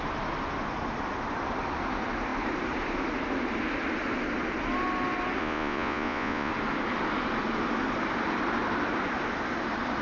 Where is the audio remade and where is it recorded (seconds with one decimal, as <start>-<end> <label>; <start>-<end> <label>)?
0.0-5.4 recorded; 5.4-6.5 remade; 6.5-10.0 recorded